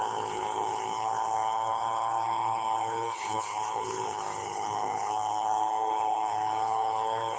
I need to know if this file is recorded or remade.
remade